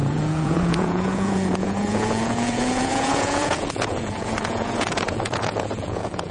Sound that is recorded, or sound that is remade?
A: remade